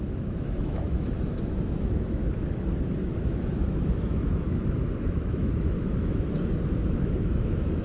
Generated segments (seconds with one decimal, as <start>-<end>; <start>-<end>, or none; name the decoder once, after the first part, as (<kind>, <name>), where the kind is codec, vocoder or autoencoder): 0.0-2.2 (autoencoder, DAC-VAE); 3.0-7.8